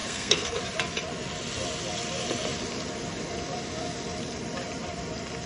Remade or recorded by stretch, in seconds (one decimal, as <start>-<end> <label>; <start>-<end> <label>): 0.0-0.6 remade; 0.6-5.5 recorded